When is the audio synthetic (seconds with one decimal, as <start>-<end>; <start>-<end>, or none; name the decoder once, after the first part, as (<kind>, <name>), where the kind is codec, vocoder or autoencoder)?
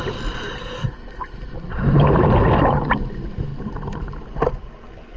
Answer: 3.5-4.0 (vocoder, BigVGAN v2)